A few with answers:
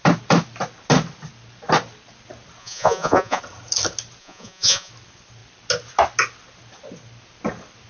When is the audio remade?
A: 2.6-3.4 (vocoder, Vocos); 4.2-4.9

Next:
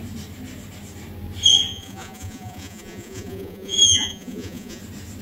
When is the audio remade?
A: 1.7-4.8 (vocoder, Vocos)

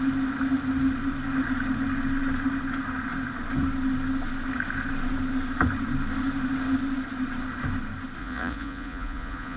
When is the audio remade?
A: 8.2-9.6 (vocoder, Vocos)

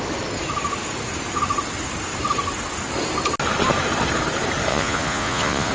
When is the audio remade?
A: 4.7-5.7 (vocoder, Vocos)

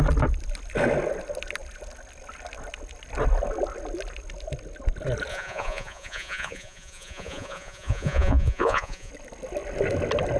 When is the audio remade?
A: 5.3-9.1 (vocoder, Vocos)

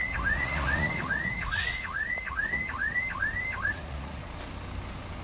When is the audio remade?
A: 0.0-3.0 (vocoder, Vocos); 3.7-4.2